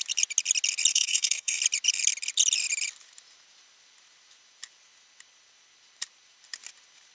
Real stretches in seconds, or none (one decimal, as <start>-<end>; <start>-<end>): 0.0-0.9; 1.6-7.1